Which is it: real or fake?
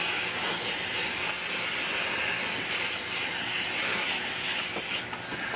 real